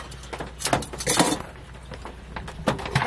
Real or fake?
real